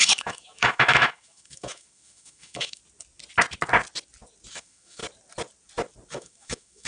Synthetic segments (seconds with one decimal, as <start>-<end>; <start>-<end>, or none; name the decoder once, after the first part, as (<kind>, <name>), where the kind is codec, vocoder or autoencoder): 0.0-2.8 (autoencoder, DAC-VAE); 4.5-5.0; 6.1-6.9